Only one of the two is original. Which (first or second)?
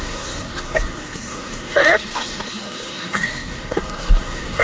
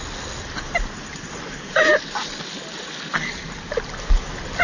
second